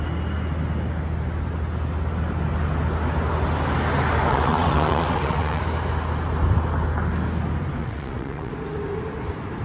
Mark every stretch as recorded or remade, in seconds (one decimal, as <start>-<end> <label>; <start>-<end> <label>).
0.0-4.3 recorded; 4.3-5.6 remade; 5.6-7.8 recorded; 7.8-8.5 remade; 8.5-9.6 recorded